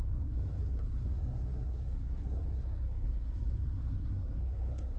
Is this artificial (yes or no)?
yes